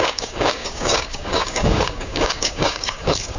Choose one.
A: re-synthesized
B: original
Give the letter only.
A